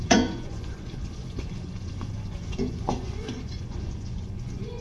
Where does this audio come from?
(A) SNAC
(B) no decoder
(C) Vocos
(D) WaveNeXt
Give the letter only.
C